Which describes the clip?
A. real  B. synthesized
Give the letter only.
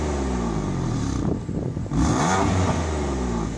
A